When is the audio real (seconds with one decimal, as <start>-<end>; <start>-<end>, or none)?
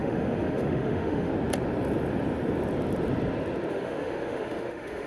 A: 1.3-3.7